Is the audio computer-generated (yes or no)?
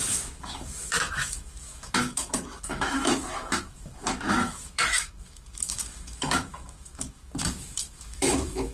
yes